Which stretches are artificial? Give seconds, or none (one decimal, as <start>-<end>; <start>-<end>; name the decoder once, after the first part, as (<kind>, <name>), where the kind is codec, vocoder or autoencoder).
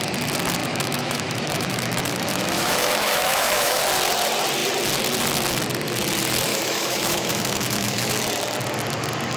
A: 0.6-3.8 (autoencoder, DAC-VAE); 6.5-8.1